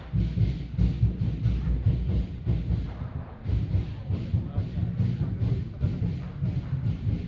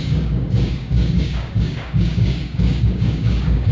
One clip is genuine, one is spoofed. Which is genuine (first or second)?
first